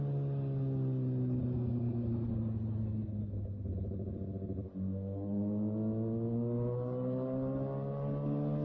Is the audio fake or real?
real